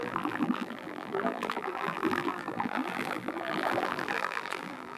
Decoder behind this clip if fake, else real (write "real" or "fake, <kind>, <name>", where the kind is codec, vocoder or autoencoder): fake, vocoder, BigVGAN v2